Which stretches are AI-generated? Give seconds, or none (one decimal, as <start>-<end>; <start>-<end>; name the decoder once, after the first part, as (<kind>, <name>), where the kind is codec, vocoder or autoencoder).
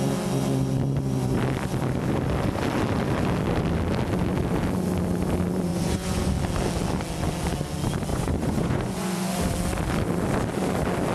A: 5.7-6.3 (vocoder, Vocos); 8.1-9.4